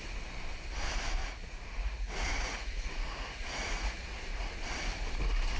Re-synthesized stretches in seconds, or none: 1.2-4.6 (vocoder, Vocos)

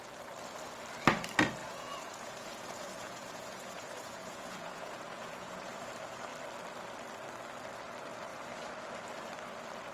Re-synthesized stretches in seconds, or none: 1.6-5.7 (vocoder, Vocos)

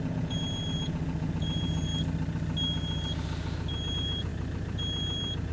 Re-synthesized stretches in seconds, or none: 0.0-1.9 (vocoder, Vocos); 3.9-4.3

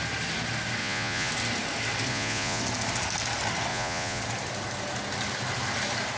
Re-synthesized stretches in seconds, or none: 0.8-1.3 (vocoder, Vocos); 2.1-2.6; 3.7-4.2